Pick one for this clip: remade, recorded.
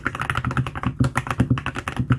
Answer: recorded